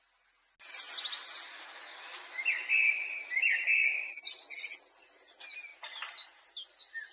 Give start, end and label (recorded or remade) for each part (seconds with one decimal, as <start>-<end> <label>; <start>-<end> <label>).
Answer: 0.0-7.1 recorded